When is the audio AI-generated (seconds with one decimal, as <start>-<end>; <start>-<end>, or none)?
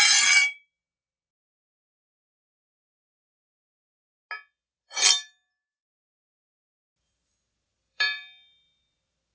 0.4-2.4; 7.7-8.2